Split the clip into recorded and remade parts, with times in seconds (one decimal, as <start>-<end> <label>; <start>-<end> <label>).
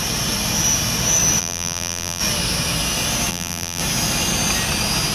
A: 0.0-1.4 recorded; 1.4-2.2 remade; 2.2-3.3 recorded; 3.3-3.8 remade; 3.8-5.1 recorded